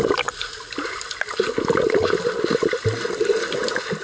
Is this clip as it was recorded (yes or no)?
yes